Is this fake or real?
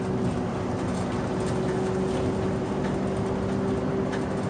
real